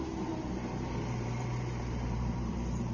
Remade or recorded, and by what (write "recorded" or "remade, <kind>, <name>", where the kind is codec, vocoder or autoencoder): remade, vocoder, BigVGAN v2